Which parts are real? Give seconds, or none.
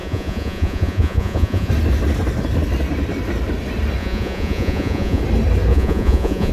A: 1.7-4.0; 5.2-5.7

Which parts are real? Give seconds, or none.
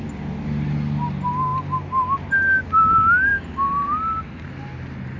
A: 0.0-5.2